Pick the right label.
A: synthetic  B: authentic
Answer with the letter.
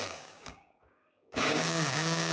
A